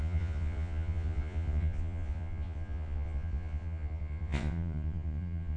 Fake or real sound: fake